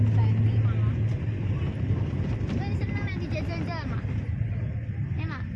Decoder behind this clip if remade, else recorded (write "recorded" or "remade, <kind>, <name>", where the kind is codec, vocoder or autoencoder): recorded